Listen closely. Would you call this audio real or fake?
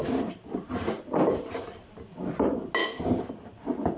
real